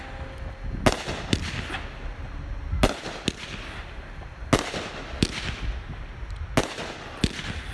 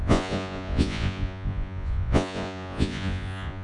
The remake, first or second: second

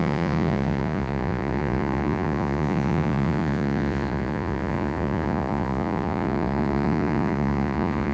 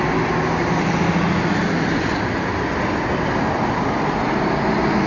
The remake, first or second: first